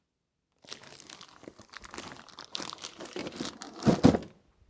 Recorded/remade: recorded